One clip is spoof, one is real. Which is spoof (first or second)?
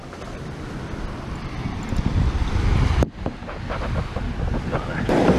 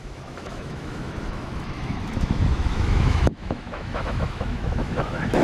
second